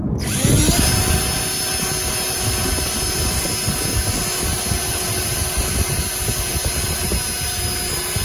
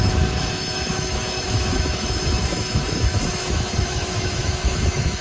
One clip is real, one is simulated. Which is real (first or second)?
first